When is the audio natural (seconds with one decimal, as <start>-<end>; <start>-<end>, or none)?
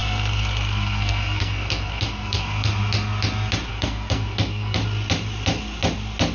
2.7-3.7; 4.8-6.3